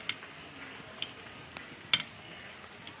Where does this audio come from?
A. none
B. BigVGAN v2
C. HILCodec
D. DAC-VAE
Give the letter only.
A